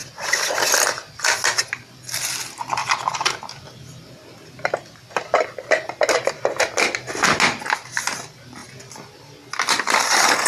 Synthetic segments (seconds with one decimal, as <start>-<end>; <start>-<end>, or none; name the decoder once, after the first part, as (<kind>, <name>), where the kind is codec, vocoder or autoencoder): none